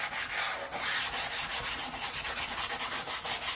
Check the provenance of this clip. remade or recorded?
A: recorded